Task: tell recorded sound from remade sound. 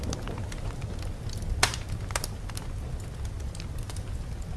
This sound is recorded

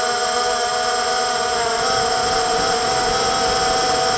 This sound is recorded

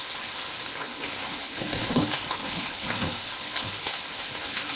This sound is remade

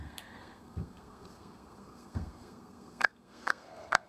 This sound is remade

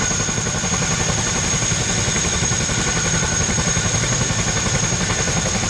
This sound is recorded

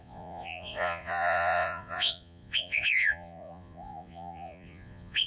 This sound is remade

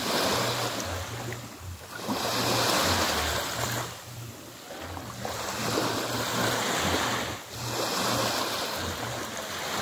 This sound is recorded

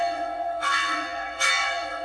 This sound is remade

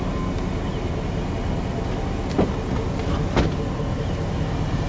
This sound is recorded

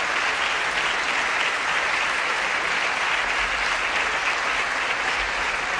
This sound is recorded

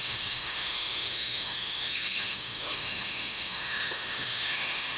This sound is remade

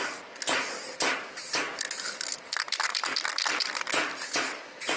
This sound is remade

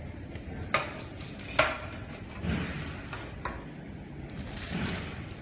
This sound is recorded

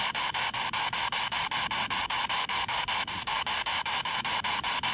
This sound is recorded